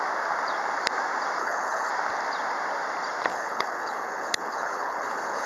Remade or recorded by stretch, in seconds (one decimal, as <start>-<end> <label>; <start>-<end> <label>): 0.0-1.4 recorded; 1.4-1.9 remade; 1.9-3.3 recorded; 3.3-5.5 remade